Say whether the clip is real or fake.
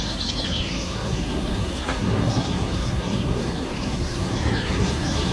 fake